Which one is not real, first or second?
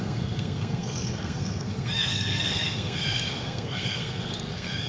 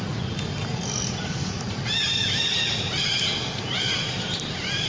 first